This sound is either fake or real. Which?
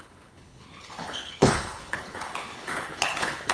fake